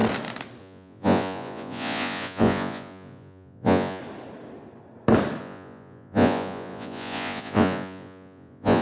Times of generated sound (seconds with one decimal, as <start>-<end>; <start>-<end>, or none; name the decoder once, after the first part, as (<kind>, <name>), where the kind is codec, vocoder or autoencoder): 0.6-4.0 (vocoder, Vocos); 5.4-8.8